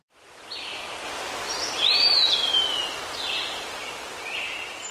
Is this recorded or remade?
recorded